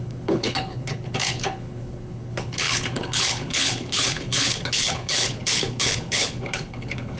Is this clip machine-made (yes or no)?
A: yes